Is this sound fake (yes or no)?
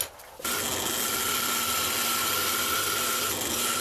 no